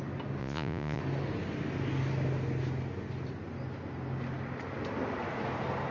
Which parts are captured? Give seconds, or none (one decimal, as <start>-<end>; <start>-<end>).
0.0-0.4; 1.0-5.9